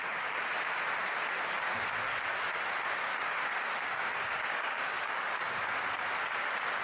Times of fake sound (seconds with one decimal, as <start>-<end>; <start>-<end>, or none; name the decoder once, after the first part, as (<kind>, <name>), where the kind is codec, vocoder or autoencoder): 3.1-5.6 (codec, DAC)